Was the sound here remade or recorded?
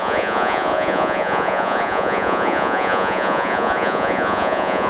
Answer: remade